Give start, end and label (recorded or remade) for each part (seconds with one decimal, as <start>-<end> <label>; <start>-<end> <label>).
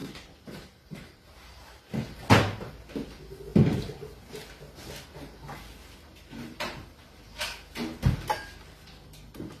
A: 0.0-1.8 remade; 1.8-6.1 recorded; 6.1-6.8 remade; 6.8-9.6 recorded